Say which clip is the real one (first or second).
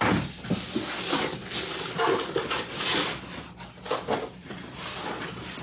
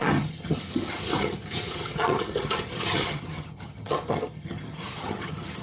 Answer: first